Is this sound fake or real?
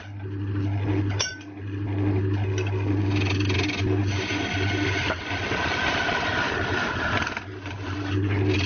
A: real